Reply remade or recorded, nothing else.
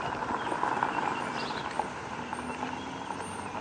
recorded